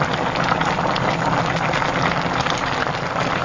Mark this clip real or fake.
real